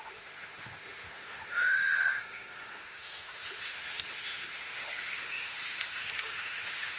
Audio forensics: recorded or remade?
remade